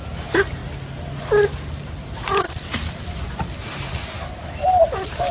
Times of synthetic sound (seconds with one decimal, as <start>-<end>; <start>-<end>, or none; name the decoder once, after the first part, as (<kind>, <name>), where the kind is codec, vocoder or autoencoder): none